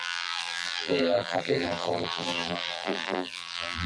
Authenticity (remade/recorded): remade